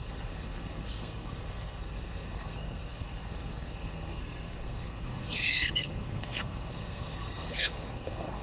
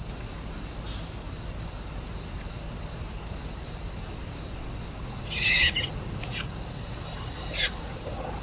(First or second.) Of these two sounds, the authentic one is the second